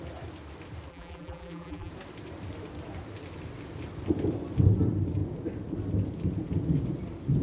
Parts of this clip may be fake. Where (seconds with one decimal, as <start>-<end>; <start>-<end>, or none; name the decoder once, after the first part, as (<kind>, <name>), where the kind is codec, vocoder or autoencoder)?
0.9-1.9 (vocoder, BigVGAN v2)